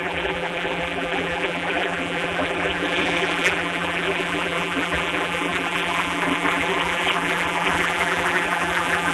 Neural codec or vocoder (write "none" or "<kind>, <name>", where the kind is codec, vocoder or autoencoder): vocoder, BigVGAN v2